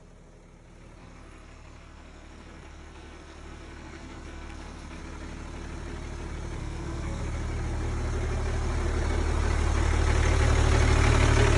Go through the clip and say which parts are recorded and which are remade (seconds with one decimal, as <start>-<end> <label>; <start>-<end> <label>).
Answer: 0.0-1.0 recorded; 1.0-5.0 remade; 5.0-6.6 recorded; 6.6-7.2 remade; 7.2-11.6 recorded

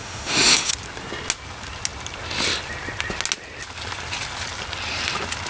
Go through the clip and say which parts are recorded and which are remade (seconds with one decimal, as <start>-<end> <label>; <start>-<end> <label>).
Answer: 0.0-0.7 remade; 0.7-5.5 recorded

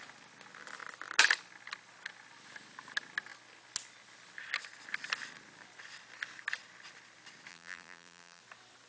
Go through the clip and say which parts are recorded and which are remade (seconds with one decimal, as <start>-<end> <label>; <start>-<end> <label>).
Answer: 0.0-7.5 recorded; 7.5-8.4 remade; 8.4-8.9 recorded

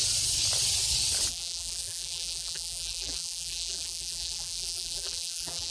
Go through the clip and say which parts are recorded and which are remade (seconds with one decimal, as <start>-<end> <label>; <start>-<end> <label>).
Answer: 0.0-1.3 recorded; 1.3-5.7 remade